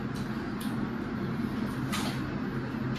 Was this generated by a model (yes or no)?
no